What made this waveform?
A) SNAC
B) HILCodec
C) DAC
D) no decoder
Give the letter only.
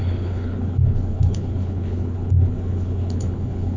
B